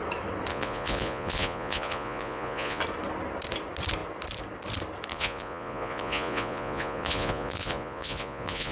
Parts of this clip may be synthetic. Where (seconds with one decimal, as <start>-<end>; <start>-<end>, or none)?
0.5-2.8; 5.1-8.7